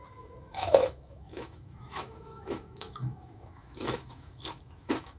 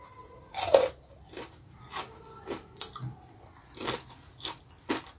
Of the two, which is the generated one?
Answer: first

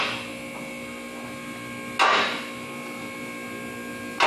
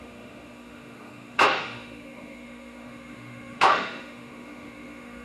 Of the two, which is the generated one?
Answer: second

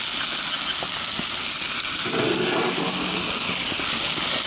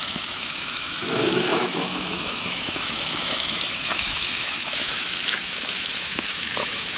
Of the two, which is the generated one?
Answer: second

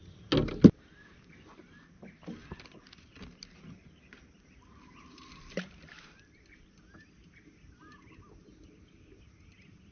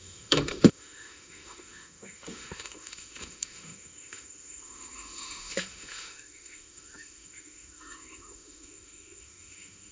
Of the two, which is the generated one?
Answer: second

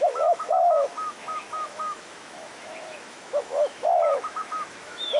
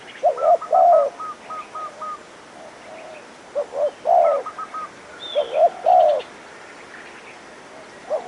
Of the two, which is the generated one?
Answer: first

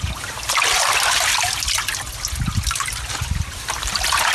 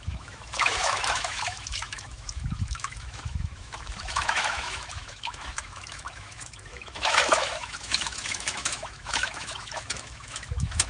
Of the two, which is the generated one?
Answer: second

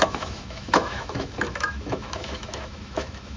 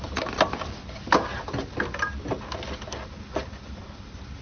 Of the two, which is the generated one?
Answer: first